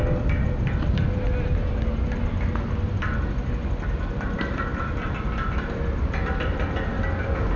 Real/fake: real